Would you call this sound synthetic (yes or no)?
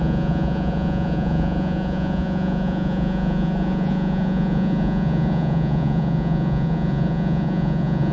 yes